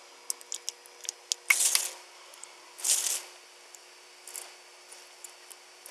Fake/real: real